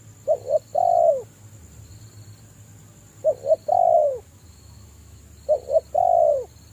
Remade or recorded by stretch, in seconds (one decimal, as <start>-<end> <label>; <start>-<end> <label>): 0.0-4.0 recorded; 4.0-5.2 remade; 5.2-6.7 recorded